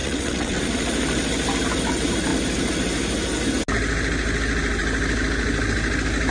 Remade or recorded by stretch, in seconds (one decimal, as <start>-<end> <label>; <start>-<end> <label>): 0.0-0.6 remade; 0.6-6.3 recorded